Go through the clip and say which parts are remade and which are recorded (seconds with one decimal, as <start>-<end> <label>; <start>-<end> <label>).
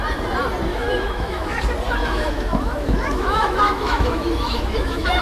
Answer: 0.0-0.7 recorded; 0.7-1.6 remade; 1.6-2.0 recorded; 2.0-5.2 remade